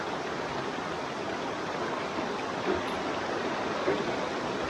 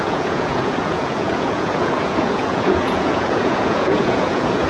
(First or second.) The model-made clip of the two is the second